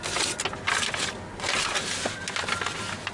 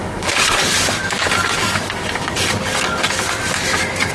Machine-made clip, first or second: second